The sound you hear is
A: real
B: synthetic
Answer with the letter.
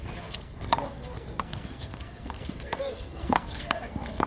B